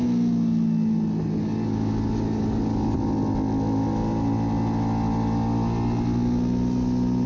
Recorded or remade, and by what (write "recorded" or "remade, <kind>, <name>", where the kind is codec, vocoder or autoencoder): recorded